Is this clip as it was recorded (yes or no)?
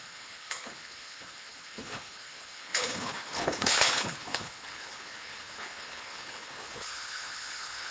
no